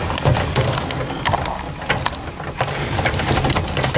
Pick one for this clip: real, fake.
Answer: real